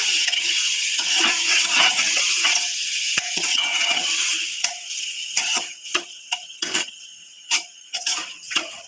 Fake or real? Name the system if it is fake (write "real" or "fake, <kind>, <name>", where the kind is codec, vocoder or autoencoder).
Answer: fake, vocoder, HiFi-GAN